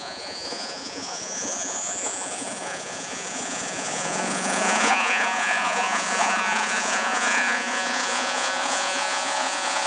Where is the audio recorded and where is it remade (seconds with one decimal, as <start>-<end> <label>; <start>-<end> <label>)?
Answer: 0.0-9.9 remade